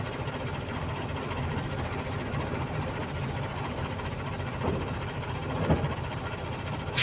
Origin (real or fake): real